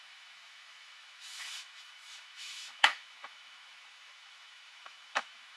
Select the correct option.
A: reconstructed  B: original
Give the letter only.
A